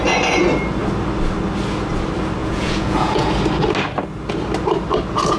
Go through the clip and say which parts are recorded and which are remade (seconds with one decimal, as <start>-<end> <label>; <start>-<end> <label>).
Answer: 0.0-2.4 recorded; 2.4-3.3 remade; 3.3-5.4 recorded